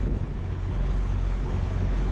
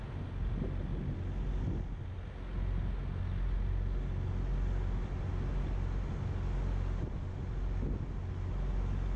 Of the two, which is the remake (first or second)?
first